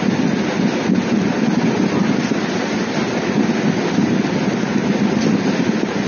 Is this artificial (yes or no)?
no